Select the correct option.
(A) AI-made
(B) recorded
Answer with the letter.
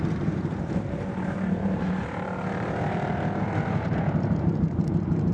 A